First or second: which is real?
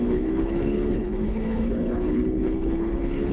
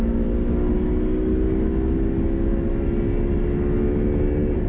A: second